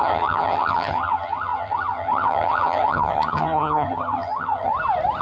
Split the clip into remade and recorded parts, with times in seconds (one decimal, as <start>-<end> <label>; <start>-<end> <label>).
0.0-4.7 remade; 4.7-5.2 recorded